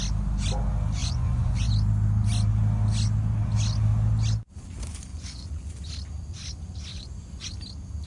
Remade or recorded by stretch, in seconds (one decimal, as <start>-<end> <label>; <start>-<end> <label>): 0.0-1.0 recorded; 1.0-1.7 remade; 1.7-5.1 recorded; 5.1-5.7 remade; 5.7-6.9 recorded; 6.9-7.5 remade; 7.5-8.1 recorded